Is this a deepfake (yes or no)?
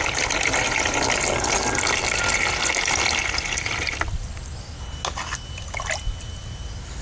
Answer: no